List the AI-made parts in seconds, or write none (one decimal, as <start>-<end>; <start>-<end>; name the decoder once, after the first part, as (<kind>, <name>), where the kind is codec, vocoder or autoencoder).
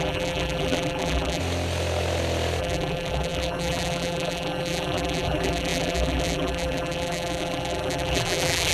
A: 0.0-1.4 (vocoder, BigVGAN v2); 2.6-8.7